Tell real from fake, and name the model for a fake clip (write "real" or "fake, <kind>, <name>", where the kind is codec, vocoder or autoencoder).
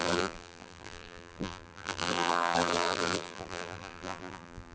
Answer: fake, vocoder, BigVGAN v2